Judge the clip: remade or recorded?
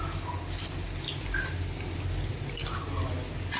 recorded